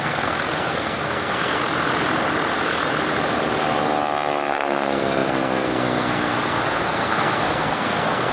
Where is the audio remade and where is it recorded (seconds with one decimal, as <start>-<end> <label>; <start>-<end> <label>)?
0.0-1.6 remade; 1.6-4.5 recorded; 4.5-8.3 remade

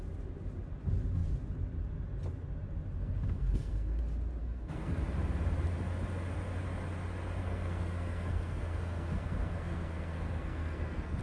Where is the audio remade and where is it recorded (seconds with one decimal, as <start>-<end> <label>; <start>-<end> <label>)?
0.0-3.0 recorded; 3.0-4.0 remade; 4.0-4.4 recorded; 4.4-5.0 remade; 5.0-7.4 recorded; 7.4-11.2 remade

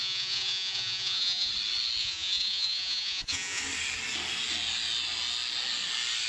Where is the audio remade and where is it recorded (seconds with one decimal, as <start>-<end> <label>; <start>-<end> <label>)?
0.0-1.5 remade; 1.5-2.0 recorded; 2.0-3.6 remade; 3.6-6.3 recorded

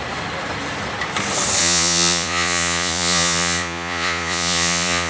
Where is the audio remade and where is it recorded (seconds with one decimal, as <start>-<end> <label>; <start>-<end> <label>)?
0.0-1.6 recorded; 1.6-5.1 remade

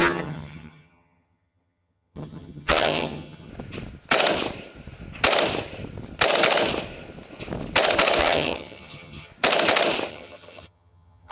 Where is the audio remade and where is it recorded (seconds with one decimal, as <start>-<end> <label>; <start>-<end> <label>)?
0.0-3.5 remade; 3.5-8.2 recorded; 8.2-9.3 remade; 9.3-10.1 recorded; 10.1-11.3 remade